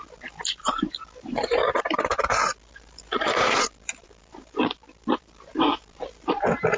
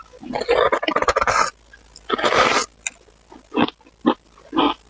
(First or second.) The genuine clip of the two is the second